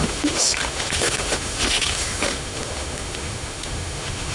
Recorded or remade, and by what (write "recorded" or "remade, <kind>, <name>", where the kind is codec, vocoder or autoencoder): remade, autoencoder, DAC-VAE